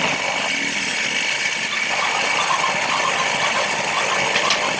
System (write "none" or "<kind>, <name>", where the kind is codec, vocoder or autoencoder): none